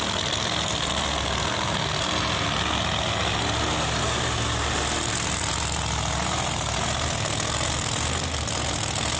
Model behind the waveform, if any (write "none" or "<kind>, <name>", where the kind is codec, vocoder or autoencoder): none